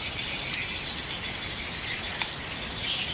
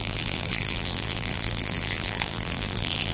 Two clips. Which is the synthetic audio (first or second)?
second